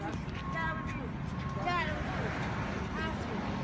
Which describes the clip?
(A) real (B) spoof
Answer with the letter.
A